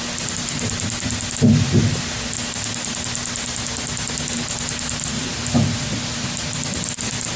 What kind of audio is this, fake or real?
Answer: real